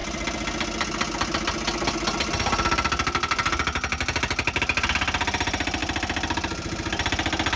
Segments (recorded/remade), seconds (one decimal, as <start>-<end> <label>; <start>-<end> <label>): 0.0-7.6 recorded